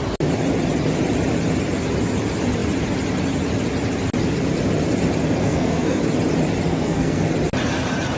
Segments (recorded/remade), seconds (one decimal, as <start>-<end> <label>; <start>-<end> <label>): 0.0-5.4 recorded; 5.4-6.0 remade; 6.0-6.7 recorded; 6.7-7.3 remade; 7.3-8.2 recorded